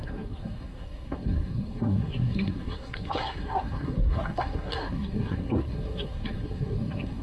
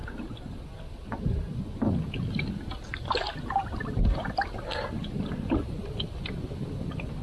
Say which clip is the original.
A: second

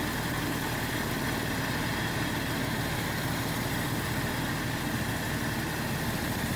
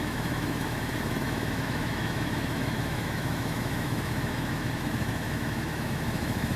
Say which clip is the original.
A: first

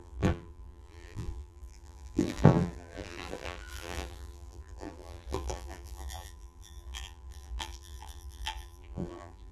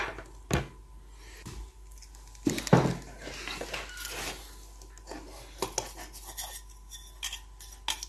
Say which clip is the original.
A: second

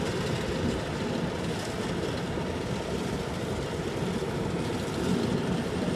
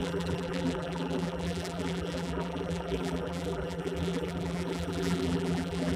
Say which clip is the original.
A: first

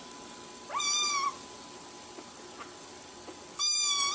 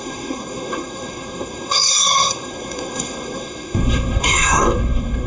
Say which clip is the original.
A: first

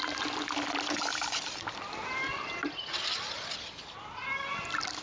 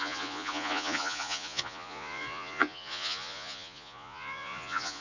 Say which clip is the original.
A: first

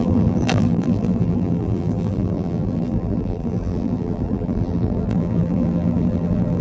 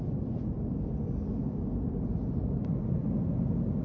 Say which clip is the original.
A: second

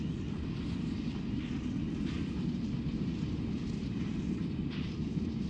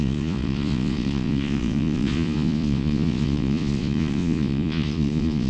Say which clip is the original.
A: first